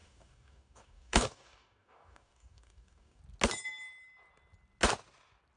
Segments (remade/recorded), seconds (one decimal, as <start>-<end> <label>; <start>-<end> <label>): 0.0-3.2 remade; 3.2-5.6 recorded